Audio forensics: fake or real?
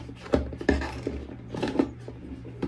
real